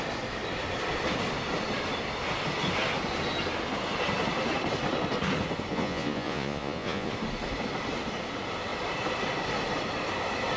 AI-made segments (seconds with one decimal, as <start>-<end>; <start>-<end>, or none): 5.7-7.1